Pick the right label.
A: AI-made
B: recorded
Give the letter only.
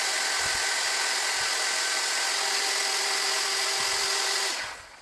B